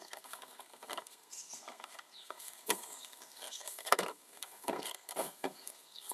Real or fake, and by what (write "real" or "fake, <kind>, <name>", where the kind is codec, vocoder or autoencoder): fake, codec, SNAC